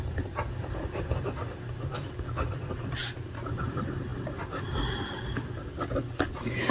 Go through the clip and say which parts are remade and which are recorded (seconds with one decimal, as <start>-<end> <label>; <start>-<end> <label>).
0.0-6.7 recorded